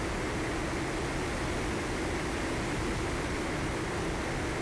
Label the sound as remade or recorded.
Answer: recorded